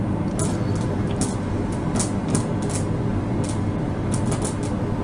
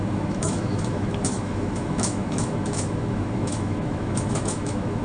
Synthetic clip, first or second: second